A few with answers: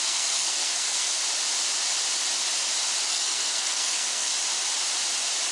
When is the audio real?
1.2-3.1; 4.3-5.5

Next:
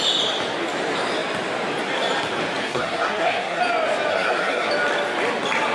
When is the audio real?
0.0-2.6; 3.6-4.1; 4.7-5.7

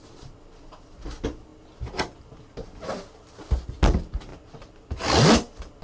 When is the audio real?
0.0-5.8

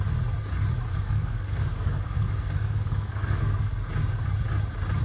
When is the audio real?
0.0-0.9; 3.9-5.0

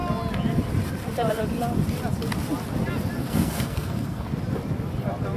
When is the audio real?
0.0-3.2; 4.3-5.4

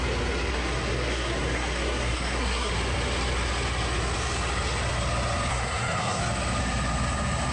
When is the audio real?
0.0-0.5; 2.7-5.5; 6.2-7.5

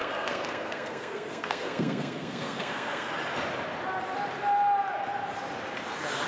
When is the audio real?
3.1-6.3

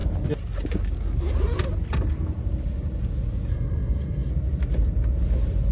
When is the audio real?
0.0-3.5; 4.3-5.7